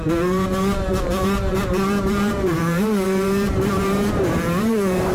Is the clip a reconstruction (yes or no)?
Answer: yes